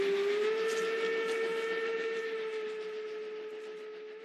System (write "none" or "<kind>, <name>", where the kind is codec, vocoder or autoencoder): none